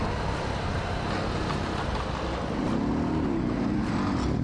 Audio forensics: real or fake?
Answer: real